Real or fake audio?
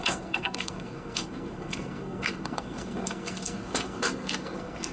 fake